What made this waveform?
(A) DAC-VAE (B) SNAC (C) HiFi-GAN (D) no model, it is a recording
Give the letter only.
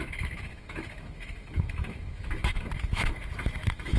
A